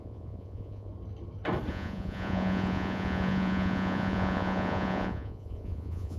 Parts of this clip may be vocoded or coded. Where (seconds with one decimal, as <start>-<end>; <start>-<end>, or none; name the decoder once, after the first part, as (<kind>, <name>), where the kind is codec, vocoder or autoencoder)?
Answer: 0.0-0.9 (vocoder, Vocos); 1.7-6.2